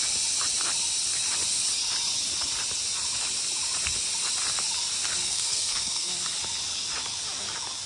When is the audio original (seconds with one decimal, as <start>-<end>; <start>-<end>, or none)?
0.0-5.2; 6.1-7.9